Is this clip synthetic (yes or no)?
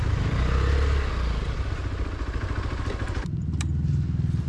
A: no